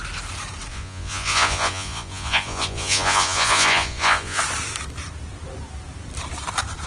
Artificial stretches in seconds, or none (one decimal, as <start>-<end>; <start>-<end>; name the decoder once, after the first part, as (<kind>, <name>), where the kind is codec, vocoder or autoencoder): 0.7-4.4 (vocoder, Vocos)